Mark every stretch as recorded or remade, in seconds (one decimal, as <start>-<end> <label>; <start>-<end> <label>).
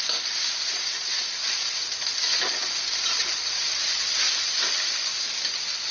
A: 0.0-5.9 recorded